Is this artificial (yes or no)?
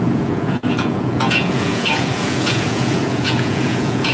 yes